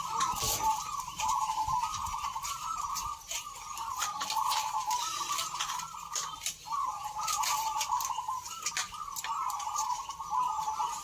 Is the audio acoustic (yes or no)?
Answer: no